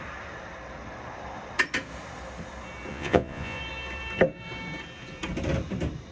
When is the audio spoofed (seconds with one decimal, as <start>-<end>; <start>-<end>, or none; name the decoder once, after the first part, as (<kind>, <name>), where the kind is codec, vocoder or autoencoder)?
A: 2.9-3.6 (vocoder, Vocos)